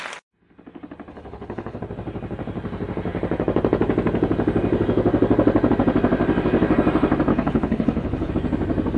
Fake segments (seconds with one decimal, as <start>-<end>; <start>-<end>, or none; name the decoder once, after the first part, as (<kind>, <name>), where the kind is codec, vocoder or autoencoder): 1.1-1.8 (codec, HILCodec); 7.3-8.3